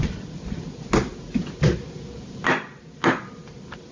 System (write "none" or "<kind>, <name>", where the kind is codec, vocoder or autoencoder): none